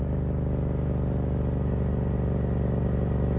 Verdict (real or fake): real